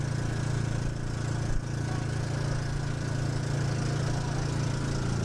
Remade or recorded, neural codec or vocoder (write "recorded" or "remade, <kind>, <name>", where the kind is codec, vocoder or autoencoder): recorded